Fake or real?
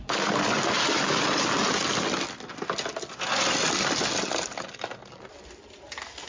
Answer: real